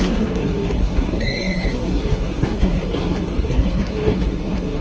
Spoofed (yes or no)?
yes